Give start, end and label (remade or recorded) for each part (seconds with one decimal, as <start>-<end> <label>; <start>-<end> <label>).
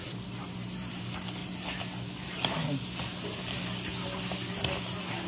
0.0-5.3 recorded